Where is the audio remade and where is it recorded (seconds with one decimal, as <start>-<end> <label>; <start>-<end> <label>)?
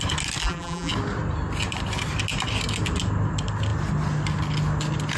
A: 0.0-0.4 recorded; 0.4-0.9 remade; 0.9-5.2 recorded